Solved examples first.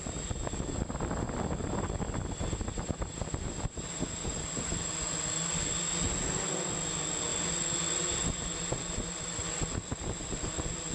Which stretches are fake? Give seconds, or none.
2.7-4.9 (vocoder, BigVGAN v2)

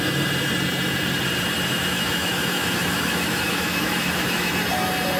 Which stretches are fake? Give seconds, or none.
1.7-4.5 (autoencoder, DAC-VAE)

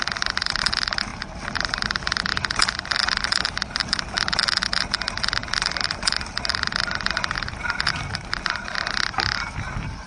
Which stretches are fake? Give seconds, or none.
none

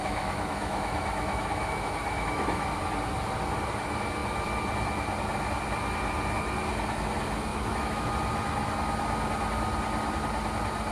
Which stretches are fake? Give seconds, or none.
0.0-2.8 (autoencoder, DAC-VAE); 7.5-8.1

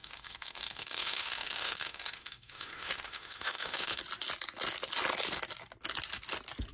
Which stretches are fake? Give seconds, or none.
0.0-4.0 (autoencoder, DAC-VAE)

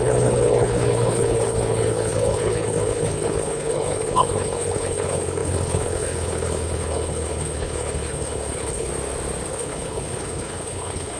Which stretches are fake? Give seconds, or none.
0.0-8.9 (codec, HILCodec); 9.5-11.2

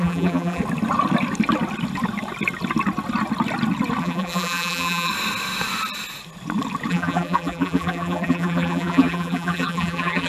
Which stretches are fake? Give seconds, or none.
0.0-0.6 (vocoder, BigVGAN v2); 4.0-5.1; 6.9-10.3

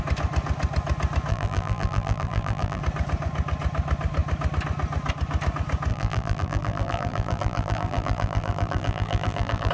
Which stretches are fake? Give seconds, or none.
1.3-2.8 (vocoder, BigVGAN v2); 5.9-9.7